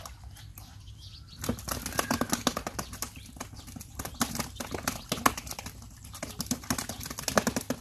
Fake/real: real